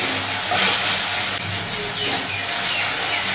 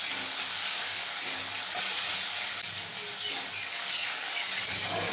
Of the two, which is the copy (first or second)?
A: second